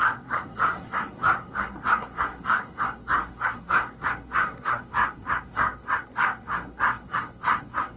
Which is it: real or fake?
fake